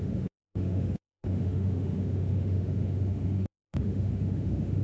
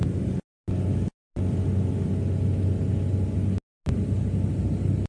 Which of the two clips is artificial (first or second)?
first